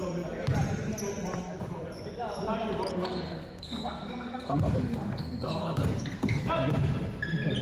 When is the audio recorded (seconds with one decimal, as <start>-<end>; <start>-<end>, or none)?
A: 0.0-2.9; 6.5-7.6